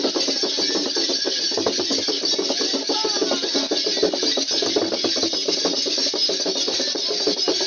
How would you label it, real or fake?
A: real